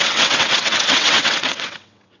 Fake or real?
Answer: fake